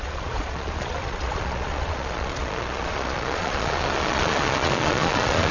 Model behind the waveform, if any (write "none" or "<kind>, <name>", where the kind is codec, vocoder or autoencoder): vocoder, Vocos